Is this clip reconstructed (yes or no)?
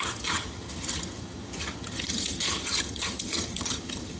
yes